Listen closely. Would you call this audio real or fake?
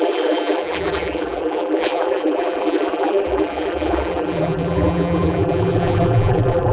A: fake